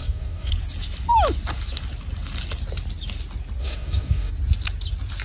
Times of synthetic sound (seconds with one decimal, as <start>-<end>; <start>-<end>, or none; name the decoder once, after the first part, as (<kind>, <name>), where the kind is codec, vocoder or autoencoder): 0.0-0.5 (codec, DAC); 3.6-4.3